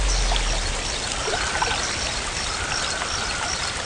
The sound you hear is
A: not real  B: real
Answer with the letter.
B